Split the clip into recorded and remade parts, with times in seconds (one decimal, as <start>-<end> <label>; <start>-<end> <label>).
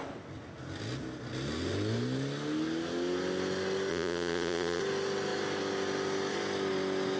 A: 0.0-3.9 recorded; 3.9-4.8 remade; 4.8-7.2 recorded